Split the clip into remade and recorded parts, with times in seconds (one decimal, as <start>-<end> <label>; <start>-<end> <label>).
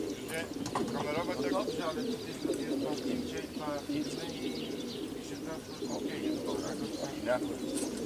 0.0-8.1 recorded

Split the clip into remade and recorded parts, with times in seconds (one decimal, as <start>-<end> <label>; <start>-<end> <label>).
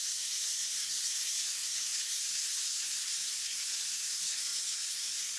0.0-5.4 remade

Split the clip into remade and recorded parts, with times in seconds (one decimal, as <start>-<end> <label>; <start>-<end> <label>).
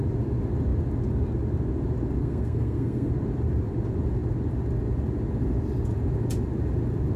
0.0-2.2 recorded; 2.2-3.1 remade; 3.1-7.2 recorded